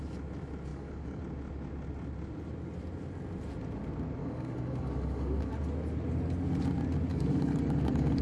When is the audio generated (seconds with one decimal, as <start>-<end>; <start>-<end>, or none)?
0.7-1.2; 4.2-5.5; 7.1-8.2